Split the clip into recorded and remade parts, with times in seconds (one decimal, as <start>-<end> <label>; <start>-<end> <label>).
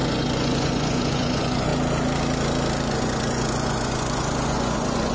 0.0-1.7 remade; 1.7-2.9 recorded; 2.9-5.1 remade